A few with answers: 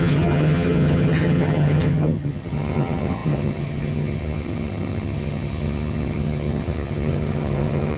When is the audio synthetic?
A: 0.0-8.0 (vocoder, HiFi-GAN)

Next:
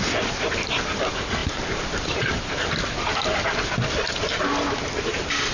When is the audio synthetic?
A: none

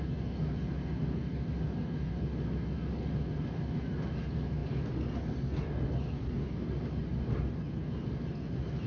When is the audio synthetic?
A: none

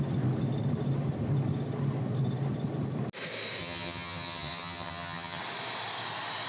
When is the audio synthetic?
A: 3.6-5.4 (vocoder, HiFi-GAN)

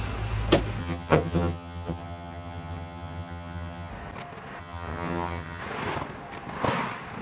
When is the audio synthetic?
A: 0.8-3.9 (vocoder, HiFi-GAN); 4.6-5.6

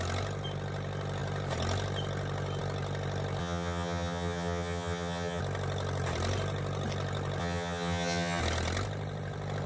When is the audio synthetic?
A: 3.4-5.4 (vocoder, HiFi-GAN); 7.4-8.4